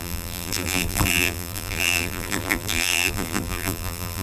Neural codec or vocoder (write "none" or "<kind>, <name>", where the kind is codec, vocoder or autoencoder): vocoder, BigVGAN v2